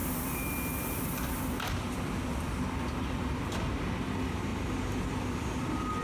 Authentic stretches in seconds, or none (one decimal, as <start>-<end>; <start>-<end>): 0.0-6.0